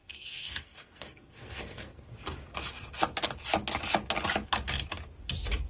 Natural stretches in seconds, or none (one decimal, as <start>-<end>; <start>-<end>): 2.1-5.7